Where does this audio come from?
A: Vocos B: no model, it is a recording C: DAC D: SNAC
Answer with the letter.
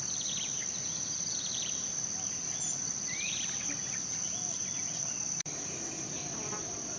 B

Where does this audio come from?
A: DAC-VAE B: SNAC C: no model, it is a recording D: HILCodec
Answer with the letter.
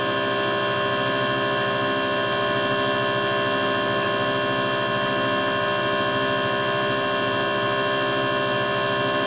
C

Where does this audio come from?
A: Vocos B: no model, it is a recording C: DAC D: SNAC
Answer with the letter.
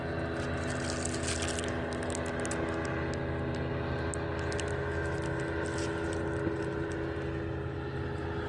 B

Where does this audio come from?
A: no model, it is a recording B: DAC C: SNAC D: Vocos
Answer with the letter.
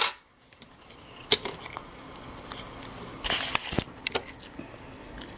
A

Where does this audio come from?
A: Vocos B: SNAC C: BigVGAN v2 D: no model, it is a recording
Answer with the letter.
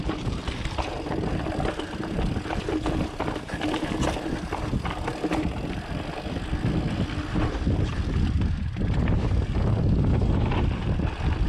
D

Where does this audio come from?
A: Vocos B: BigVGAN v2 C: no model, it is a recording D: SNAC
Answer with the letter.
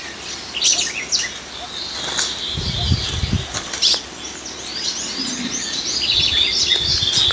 C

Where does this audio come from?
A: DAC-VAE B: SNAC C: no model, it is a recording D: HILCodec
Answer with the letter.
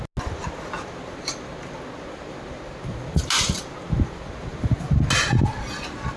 C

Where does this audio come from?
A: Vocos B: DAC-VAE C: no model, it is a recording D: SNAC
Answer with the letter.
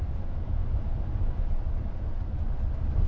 C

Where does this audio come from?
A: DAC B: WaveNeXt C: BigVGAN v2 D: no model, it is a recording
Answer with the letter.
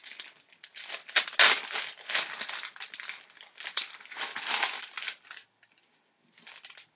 D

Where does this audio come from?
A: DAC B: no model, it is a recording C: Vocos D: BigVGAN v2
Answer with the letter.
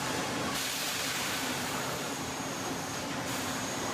D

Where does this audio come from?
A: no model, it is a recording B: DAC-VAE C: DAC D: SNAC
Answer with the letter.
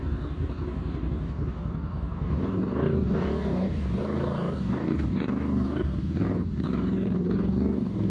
C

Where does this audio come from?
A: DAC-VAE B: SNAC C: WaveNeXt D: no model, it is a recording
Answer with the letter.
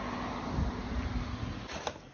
D